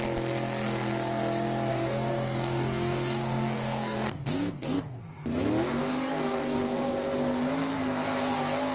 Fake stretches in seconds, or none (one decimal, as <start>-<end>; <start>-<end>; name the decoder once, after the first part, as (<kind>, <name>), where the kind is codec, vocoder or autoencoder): 1.7-5.0 (codec, DAC); 5.8-6.9